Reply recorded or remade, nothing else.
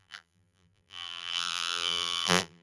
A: remade